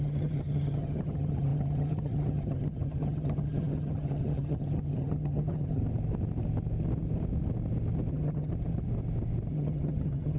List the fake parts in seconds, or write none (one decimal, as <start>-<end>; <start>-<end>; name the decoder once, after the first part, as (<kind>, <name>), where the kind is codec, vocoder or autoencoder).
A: 0.0-5.8 (vocoder, HiFi-GAN); 8.1-8.5; 9.5-10.4